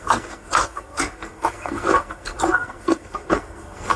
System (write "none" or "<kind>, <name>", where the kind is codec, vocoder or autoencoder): codec, SNAC